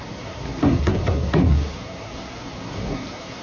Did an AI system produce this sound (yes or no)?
yes